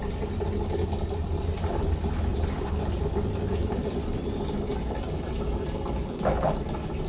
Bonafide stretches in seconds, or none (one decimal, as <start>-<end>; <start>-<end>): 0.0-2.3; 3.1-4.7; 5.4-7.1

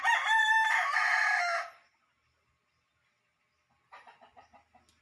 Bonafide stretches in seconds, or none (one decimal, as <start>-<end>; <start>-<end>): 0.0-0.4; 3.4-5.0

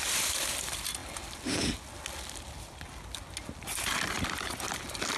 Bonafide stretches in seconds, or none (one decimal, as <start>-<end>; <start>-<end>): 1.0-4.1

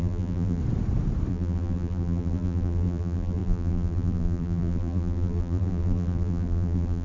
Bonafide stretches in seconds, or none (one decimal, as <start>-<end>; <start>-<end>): 0.6-1.3